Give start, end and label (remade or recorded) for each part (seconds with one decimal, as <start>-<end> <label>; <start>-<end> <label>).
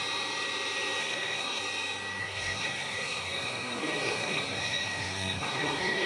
0.0-1.0 recorded; 1.0-1.6 remade; 1.6-2.2 recorded; 2.2-6.1 remade